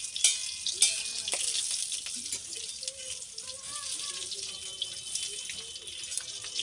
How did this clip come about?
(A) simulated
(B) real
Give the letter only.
B